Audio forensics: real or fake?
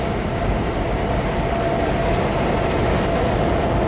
real